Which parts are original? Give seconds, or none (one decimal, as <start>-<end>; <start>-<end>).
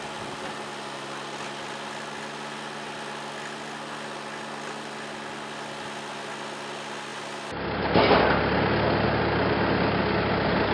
0.0-10.7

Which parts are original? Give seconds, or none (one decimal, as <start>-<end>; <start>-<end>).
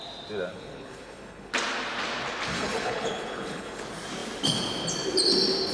0.0-0.5; 1.5-2.5; 3.8-5.7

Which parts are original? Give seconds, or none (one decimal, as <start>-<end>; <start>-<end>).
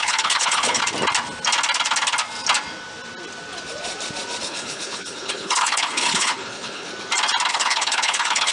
0.8-4.4; 6.9-7.5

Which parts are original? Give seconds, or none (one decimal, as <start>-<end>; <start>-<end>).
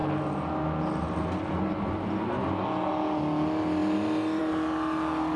0.0-5.4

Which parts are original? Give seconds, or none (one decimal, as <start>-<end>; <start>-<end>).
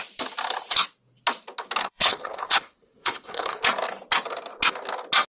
0.0-1.8; 3.6-5.3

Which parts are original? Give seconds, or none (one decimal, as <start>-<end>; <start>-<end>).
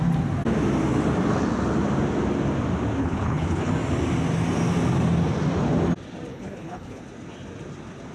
0.0-3.0; 3.7-6.3; 7.0-8.1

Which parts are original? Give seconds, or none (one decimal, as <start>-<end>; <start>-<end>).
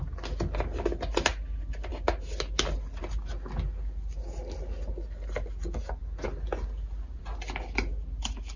0.0-8.6